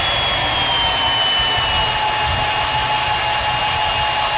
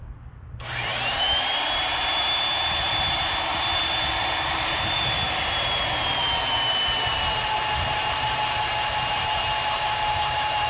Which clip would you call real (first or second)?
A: first